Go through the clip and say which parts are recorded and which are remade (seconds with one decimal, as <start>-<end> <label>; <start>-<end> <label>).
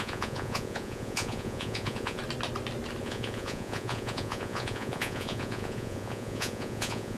0.0-2.2 remade; 2.2-3.0 recorded; 3.0-7.2 remade